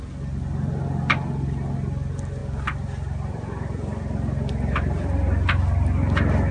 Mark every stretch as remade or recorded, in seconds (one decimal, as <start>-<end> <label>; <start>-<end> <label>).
0.0-6.5 recorded